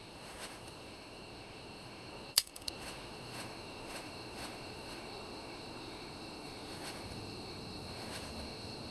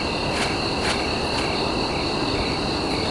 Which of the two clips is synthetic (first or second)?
first